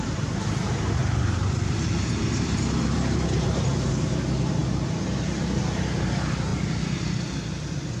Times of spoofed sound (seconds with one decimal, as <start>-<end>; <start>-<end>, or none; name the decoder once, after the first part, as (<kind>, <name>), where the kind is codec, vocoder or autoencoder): 1.0-3.9 (vocoder, BigVGAN v2); 6.5-7.2